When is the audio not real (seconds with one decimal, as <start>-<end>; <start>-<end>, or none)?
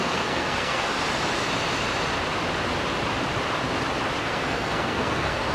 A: 0.0-0.9; 4.2-5.5